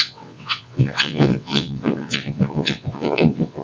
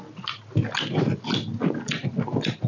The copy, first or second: first